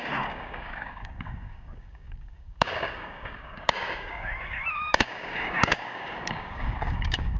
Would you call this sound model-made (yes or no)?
yes